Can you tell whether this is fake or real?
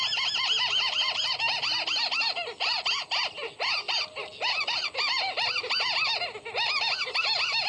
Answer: real